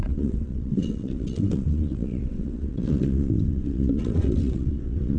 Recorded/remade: remade